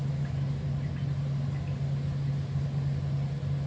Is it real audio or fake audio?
real